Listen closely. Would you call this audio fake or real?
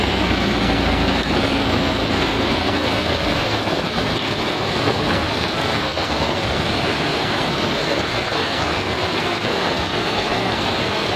fake